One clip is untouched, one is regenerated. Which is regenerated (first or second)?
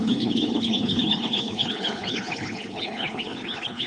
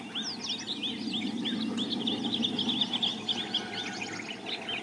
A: first